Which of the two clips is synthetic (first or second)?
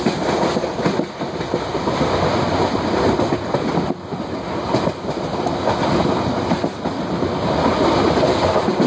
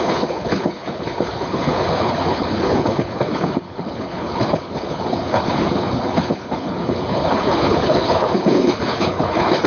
second